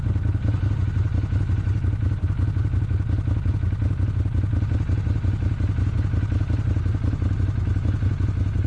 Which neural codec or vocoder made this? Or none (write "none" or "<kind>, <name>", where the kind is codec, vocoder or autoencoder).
none